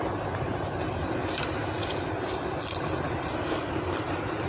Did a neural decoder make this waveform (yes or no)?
no